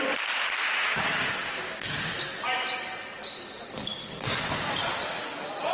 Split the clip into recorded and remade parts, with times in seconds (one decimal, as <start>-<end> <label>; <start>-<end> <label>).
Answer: 0.0-2.3 remade; 2.3-3.3 recorded; 3.3-3.9 remade; 3.9-4.4 recorded; 4.4-5.7 remade

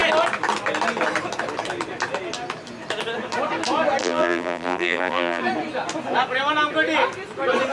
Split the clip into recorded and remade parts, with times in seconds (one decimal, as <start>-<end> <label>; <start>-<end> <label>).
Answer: 0.0-4.0 recorded; 4.0-5.4 remade; 5.4-7.7 recorded

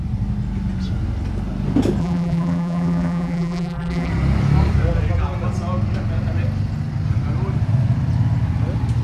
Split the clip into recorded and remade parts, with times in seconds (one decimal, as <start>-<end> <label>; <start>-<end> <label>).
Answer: 0.0-2.0 recorded; 2.0-4.1 remade; 4.1-9.0 recorded

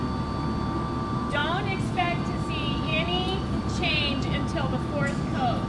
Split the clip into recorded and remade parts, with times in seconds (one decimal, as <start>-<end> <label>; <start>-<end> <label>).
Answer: 0.0-2.9 recorded; 2.9-4.1 remade; 4.1-5.7 recorded

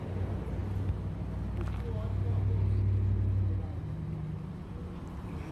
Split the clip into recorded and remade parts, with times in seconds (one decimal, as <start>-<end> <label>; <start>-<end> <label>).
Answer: 0.0-5.5 recorded

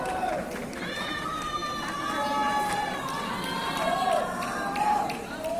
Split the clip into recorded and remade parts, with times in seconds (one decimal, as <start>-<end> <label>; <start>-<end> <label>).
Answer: 0.0-1.6 remade; 1.6-4.2 recorded; 4.2-5.6 remade

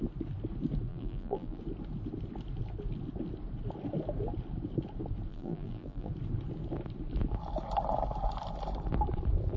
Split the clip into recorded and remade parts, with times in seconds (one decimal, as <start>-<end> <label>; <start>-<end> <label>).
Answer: 0.0-0.9 recorded; 0.9-1.6 remade; 1.6-5.3 recorded; 5.3-6.1 remade; 6.1-9.6 recorded

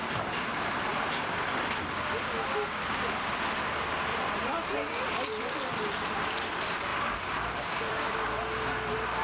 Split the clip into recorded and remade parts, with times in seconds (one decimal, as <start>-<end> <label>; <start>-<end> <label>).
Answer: 0.0-4.1 recorded; 4.1-5.0 remade; 5.0-6.9 recorded; 6.9-8.1 remade; 8.1-9.2 recorded